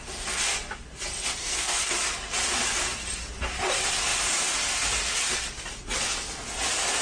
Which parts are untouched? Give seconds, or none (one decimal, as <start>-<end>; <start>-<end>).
0.0-1.4; 1.9-7.0